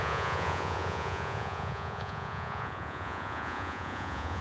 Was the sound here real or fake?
fake